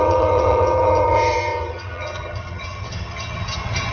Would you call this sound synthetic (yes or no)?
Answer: yes